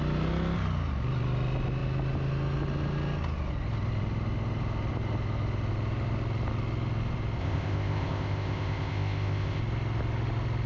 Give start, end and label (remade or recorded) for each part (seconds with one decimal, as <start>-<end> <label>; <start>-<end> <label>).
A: 0.0-7.4 recorded; 7.4-9.6 remade; 9.6-10.7 recorded